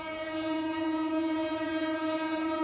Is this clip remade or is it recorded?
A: remade